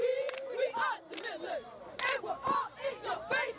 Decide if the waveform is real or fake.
real